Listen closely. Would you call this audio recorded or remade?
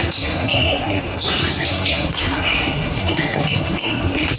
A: remade